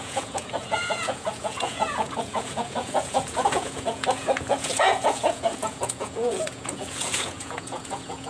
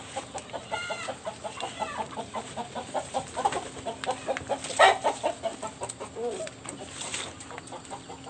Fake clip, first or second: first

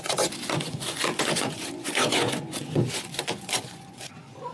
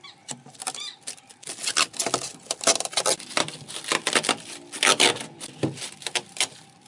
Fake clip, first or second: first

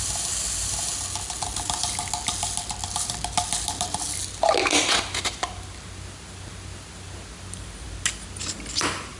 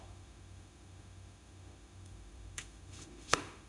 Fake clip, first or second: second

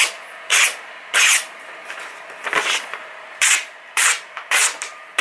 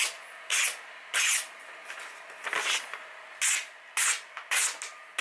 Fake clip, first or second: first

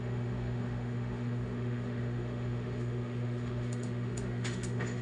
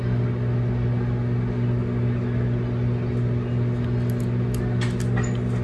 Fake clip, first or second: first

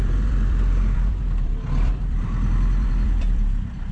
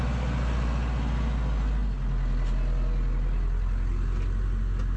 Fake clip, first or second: first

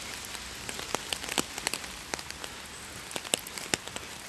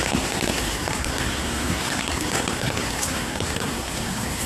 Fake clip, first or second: second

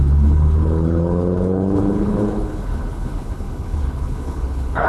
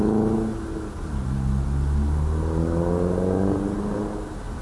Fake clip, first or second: first